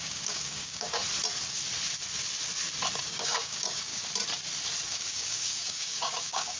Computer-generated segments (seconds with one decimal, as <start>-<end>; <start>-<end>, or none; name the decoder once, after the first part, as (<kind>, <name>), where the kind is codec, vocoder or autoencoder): 0.0-1.0 (codec, DAC); 3.0-3.9; 4.9-6.6